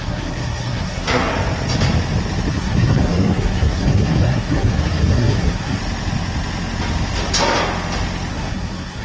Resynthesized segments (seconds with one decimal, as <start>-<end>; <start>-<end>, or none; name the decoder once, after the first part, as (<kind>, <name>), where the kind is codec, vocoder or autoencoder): 0.0-1.3 (codec, SNAC); 2.5-5.8; 8.3-9.0